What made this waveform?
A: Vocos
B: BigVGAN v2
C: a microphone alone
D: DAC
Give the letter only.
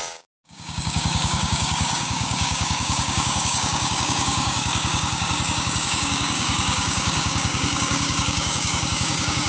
D